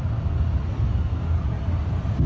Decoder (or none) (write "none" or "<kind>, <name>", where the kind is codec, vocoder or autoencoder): none